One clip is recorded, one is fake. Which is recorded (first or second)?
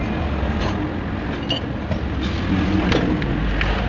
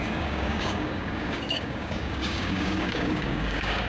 first